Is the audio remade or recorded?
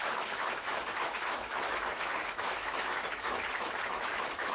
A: remade